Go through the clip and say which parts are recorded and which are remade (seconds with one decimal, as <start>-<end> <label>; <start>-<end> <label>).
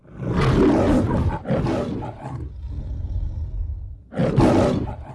0.0-4.2 recorded; 4.2-5.1 remade